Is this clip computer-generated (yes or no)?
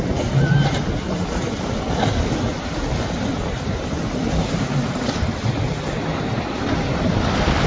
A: no